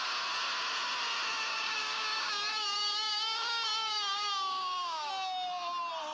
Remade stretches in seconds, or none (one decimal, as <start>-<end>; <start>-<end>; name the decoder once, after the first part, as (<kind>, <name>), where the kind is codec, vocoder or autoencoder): 1.5-5.1 (codec, DAC)